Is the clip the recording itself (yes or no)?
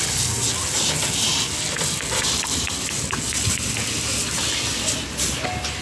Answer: yes